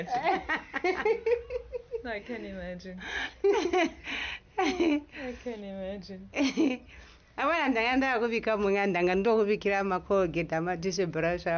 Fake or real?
real